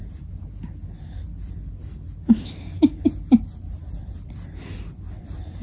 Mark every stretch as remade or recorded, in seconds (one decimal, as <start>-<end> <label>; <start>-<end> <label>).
0.0-5.6 recorded